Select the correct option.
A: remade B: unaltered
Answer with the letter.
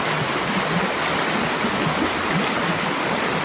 B